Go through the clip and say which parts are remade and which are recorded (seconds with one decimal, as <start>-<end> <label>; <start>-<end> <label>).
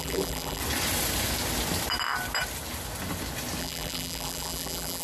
0.0-0.6 remade; 0.6-3.6 recorded; 3.6-5.0 remade